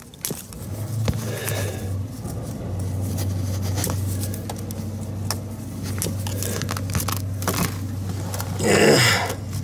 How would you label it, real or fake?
real